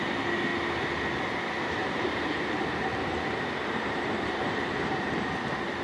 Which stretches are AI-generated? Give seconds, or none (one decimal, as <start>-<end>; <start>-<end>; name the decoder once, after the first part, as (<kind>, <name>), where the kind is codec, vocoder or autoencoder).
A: 1.8-5.3 (vocoder, BigVGAN v2)